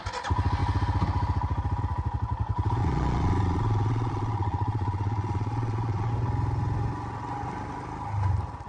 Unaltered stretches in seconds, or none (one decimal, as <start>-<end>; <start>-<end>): 0.0-2.8; 6.1-8.7